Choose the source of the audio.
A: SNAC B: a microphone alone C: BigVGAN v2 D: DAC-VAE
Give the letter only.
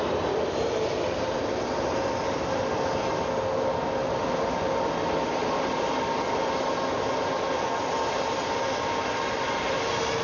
B